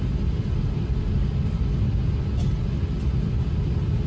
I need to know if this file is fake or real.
real